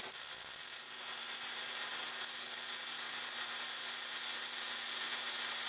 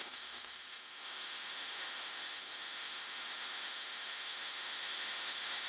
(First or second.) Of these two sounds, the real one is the first